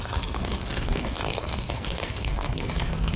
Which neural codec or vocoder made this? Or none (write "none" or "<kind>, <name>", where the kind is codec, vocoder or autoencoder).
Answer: codec, SNAC